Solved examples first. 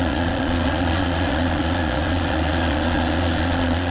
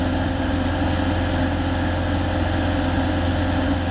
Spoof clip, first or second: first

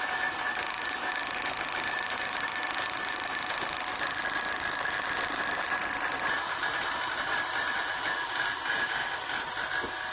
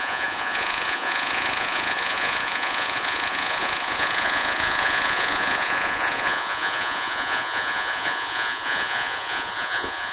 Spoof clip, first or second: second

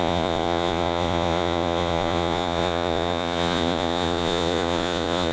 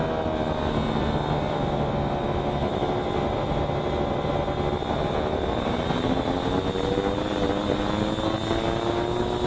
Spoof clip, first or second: first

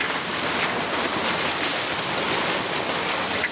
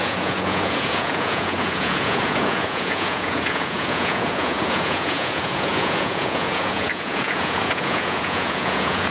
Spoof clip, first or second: second